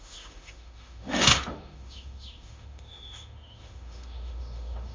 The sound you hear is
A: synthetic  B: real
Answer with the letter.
A